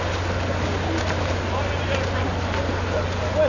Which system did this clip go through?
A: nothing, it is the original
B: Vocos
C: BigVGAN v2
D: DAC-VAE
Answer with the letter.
A